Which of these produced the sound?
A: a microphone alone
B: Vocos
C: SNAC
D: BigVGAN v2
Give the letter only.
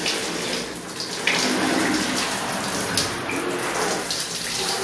A